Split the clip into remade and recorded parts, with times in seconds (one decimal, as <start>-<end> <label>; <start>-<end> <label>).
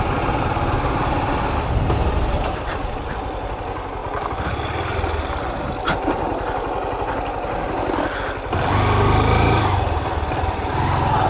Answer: 0.0-11.3 recorded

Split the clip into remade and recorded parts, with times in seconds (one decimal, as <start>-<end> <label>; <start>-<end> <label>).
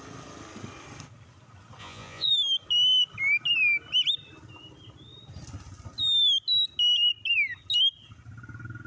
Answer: 0.0-1.8 recorded; 1.8-2.3 remade; 2.3-8.9 recorded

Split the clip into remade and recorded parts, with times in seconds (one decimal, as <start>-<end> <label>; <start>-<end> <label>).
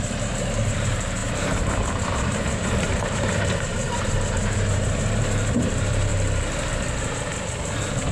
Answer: 0.0-6.1 remade; 6.1-6.7 recorded; 6.7-7.3 remade; 7.3-8.1 recorded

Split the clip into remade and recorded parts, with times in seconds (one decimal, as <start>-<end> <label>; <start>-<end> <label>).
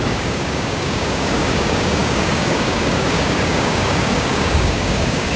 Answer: 0.0-5.4 remade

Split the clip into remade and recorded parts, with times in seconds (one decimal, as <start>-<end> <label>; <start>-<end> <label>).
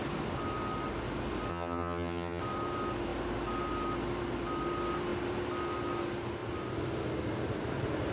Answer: 0.0-1.5 recorded; 1.5-2.4 remade; 2.4-8.1 recorded